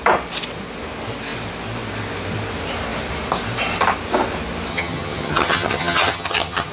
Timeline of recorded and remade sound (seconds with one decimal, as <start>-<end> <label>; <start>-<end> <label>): 0.0-4.7 recorded; 4.7-6.7 remade